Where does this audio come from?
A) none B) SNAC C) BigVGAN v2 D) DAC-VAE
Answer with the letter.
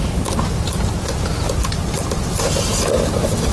A